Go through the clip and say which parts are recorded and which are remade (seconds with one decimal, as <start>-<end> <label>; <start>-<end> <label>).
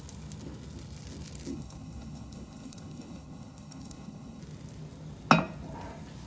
0.0-1.5 recorded; 1.5-4.4 remade; 4.4-6.3 recorded